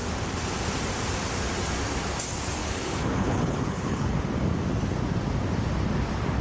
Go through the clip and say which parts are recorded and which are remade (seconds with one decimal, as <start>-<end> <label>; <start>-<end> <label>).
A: 0.0-2.6 recorded; 2.6-4.1 remade; 4.1-6.4 recorded